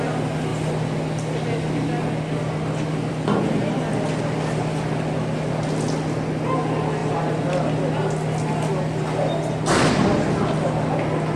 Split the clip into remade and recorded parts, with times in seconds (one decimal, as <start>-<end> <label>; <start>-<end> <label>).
0.0-11.4 recorded